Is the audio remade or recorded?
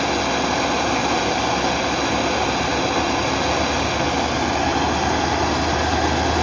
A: recorded